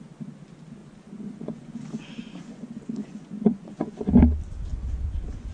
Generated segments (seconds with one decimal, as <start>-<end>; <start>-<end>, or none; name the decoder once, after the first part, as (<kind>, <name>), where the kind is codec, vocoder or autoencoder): 0.8-4.1 (vocoder, Vocos); 4.7-5.5